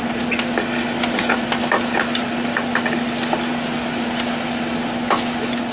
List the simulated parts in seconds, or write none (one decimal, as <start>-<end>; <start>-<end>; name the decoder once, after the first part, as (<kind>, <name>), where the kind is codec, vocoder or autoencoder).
none